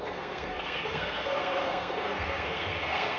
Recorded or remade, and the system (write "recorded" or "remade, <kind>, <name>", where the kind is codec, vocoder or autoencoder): remade, codec, SNAC